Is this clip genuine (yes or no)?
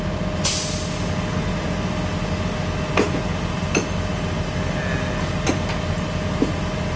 yes